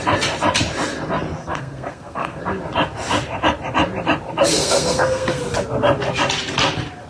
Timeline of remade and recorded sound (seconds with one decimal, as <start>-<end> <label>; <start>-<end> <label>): 0.0-1.4 recorded; 1.4-2.4 remade; 2.4-4.5 recorded; 4.5-5.4 remade; 5.4-7.1 recorded